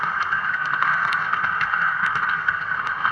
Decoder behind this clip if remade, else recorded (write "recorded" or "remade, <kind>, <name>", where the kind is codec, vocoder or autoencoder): remade, codec, SNAC